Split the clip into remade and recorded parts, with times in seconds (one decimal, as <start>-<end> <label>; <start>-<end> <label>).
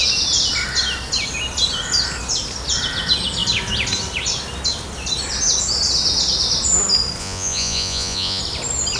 0.0-7.2 recorded; 7.2-8.4 remade; 8.4-9.0 recorded